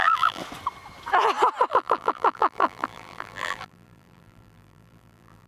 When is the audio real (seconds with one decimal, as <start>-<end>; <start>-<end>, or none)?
0.4-1.7

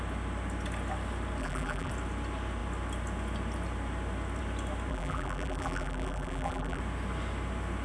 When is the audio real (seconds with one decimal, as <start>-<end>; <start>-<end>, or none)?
0.0-1.4; 1.9-4.9; 6.8-7.8

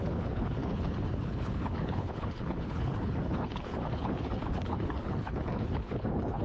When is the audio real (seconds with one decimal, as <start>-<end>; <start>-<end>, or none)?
none

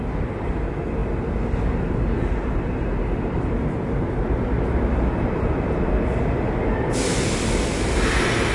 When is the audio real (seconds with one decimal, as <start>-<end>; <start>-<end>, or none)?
0.0-8.5

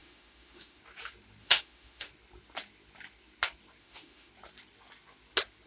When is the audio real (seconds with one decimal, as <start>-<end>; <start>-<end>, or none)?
0.8-1.4; 2.1-3.8; 4.3-5.7